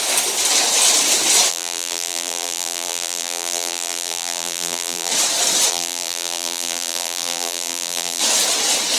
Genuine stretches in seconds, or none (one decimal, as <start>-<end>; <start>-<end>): 0.0-1.5; 5.1-5.7; 8.2-9.0